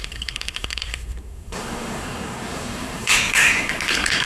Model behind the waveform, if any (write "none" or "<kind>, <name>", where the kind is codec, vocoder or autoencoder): codec, SNAC